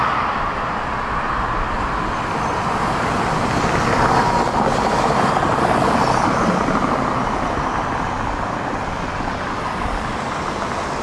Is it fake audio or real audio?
real